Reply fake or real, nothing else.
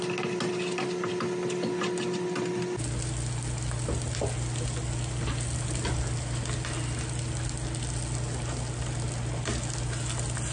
real